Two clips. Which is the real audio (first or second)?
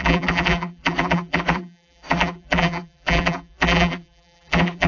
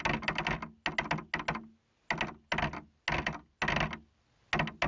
second